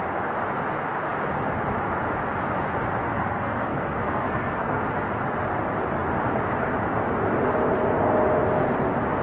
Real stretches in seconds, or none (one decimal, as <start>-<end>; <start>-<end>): 0.0-3.0; 4.8-9.2